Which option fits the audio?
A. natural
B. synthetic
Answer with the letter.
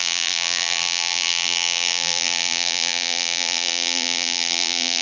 B